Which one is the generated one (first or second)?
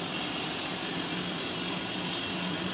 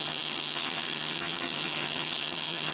second